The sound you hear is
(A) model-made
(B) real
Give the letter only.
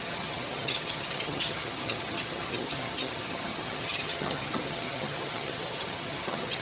A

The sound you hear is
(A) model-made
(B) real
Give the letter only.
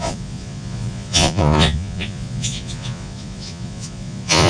A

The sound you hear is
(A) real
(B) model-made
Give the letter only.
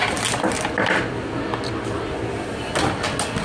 A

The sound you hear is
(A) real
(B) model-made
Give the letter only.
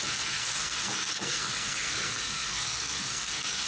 B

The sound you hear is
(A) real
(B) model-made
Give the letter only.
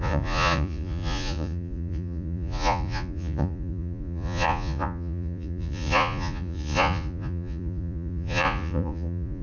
B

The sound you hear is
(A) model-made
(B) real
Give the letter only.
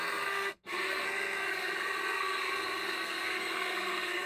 A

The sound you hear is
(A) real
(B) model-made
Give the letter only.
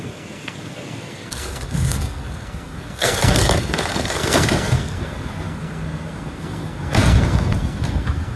B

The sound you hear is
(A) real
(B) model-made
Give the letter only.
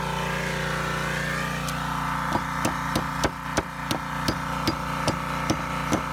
A